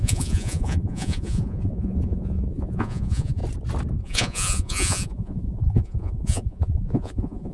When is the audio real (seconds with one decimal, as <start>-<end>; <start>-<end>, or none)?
3.4-4.0